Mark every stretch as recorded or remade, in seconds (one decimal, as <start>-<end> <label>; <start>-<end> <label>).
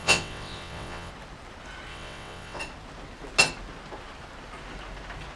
0.0-1.1 remade; 1.1-1.9 recorded; 1.9-2.6 remade; 2.6-5.4 recorded